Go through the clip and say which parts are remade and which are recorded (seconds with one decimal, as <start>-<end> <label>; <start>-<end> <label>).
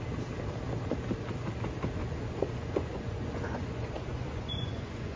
0.0-2.0 recorded; 2.0-5.2 remade